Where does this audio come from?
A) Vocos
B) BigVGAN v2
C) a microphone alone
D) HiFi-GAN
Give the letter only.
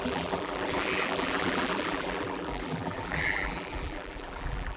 B